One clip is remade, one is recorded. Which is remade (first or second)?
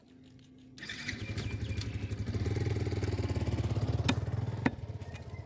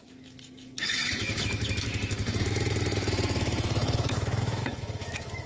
second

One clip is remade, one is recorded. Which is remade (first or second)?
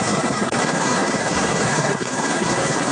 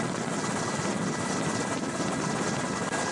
first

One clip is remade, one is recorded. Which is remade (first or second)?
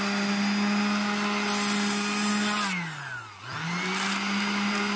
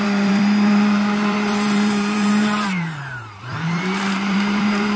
second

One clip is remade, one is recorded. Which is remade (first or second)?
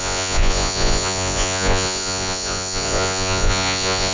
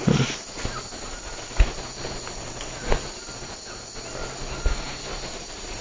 first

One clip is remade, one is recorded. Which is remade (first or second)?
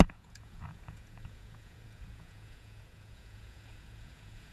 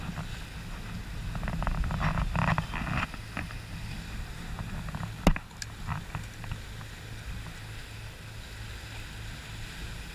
first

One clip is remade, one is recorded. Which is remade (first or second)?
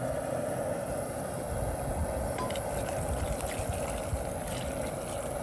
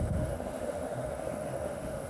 second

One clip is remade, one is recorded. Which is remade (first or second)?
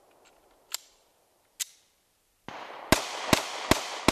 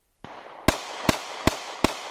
second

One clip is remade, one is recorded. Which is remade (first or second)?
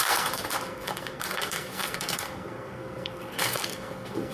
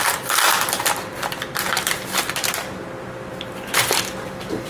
first